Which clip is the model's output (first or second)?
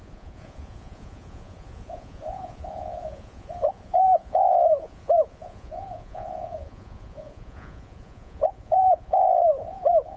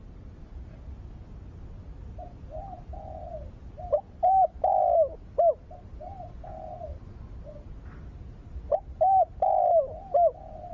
first